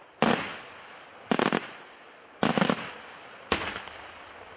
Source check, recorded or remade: recorded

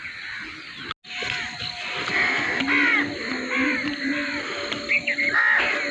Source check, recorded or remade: recorded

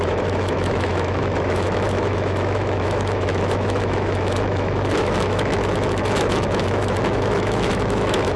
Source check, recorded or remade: remade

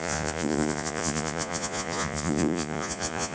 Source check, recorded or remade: remade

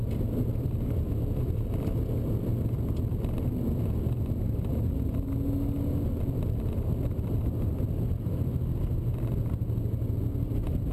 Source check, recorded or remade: recorded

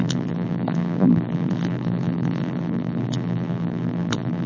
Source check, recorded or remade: remade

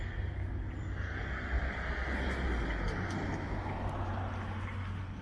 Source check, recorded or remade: recorded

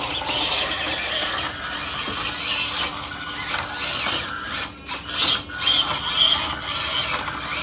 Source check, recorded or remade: recorded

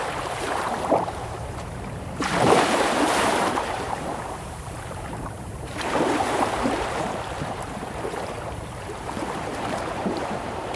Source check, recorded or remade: remade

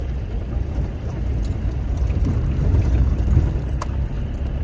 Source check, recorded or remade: recorded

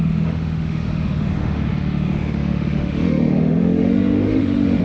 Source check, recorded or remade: remade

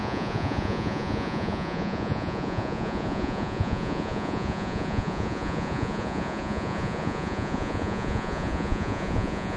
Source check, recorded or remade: remade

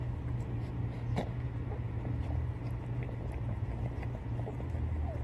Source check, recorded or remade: remade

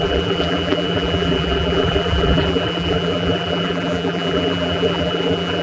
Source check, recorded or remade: remade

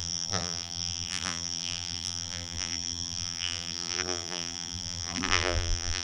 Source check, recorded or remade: remade